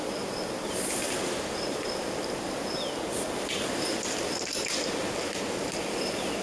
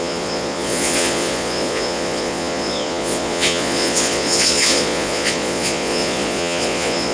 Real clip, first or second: first